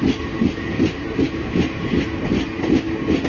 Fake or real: real